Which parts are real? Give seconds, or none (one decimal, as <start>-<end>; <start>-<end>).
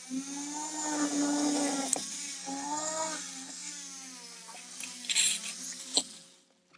0.0-2.4; 3.7-6.8